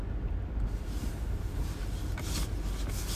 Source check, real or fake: real